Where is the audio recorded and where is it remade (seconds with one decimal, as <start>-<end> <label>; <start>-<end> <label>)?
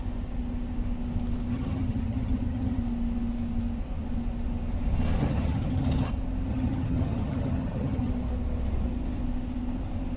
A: 0.0-1.5 recorded; 1.5-2.8 remade; 2.8-5.2 recorded; 5.2-6.1 remade; 6.1-6.5 recorded; 6.5-8.1 remade; 8.1-10.2 recorded